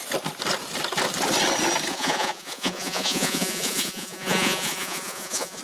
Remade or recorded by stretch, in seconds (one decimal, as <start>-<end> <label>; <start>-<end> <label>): 0.0-1.9 recorded; 1.9-5.6 remade